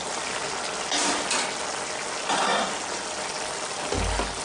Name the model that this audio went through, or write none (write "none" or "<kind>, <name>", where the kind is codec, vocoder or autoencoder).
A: none